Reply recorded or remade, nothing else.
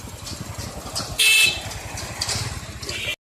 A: recorded